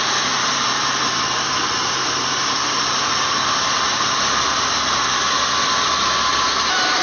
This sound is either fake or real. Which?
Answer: fake